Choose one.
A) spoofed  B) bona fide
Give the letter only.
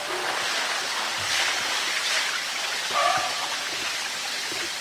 B